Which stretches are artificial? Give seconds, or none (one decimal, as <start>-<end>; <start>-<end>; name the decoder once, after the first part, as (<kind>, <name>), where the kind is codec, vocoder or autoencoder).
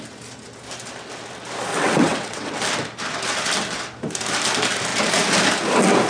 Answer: 1.7-2.5 (vocoder, WaveNeXt)